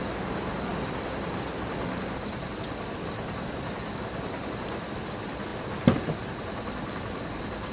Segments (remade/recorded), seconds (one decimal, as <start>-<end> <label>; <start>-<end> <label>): 0.0-7.7 recorded

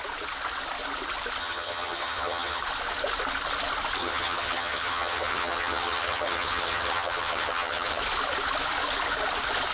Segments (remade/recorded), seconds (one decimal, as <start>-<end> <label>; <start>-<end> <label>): 0.0-1.4 recorded; 1.4-2.6 remade; 2.6-4.0 recorded; 4.0-8.0 remade; 8.0-9.7 recorded